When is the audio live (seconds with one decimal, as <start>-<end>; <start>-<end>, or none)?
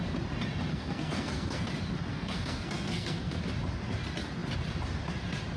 0.0-0.7; 1.7-2.1; 3.4-5.6